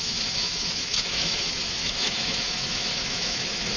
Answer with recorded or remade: remade